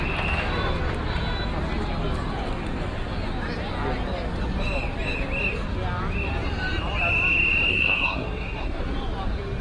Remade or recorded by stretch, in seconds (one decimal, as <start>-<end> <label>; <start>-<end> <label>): 0.0-7.7 recorded; 7.7-8.8 remade; 8.8-9.6 recorded